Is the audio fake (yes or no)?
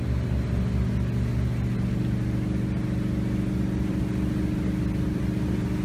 no